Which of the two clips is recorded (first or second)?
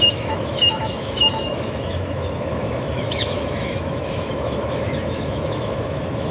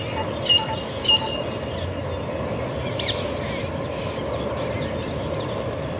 second